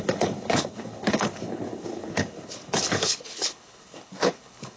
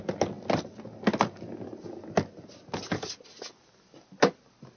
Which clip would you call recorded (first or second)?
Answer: second